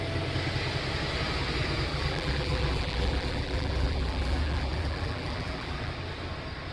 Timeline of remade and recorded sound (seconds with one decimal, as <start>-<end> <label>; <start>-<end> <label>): 0.0-1.9 recorded; 1.9-5.9 remade; 5.9-6.7 recorded